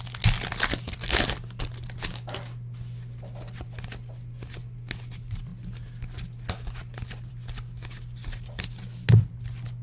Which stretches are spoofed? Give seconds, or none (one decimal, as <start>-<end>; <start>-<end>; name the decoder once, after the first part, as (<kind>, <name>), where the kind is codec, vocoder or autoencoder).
none